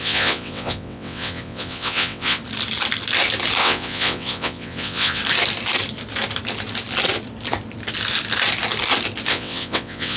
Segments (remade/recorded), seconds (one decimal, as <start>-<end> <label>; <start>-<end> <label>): 0.0-2.4 remade; 2.4-3.6 recorded; 3.6-5.2 remade; 5.2-9.3 recorded; 9.3-10.2 remade